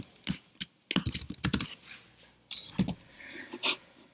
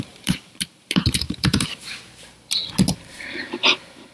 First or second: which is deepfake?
second